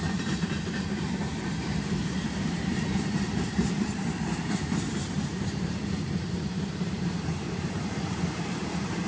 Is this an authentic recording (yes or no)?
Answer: no